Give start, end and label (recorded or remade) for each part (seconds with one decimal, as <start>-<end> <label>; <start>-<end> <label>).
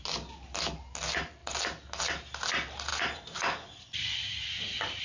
0.0-5.0 recorded